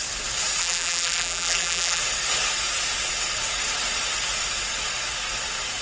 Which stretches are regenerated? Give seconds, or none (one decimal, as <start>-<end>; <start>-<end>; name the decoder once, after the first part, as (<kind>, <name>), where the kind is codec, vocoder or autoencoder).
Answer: 0.6-2.0 (vocoder, BigVGAN v2)